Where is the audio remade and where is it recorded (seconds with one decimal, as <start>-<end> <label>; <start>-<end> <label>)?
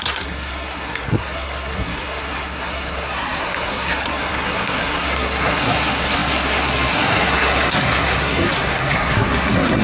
0.0-9.8 remade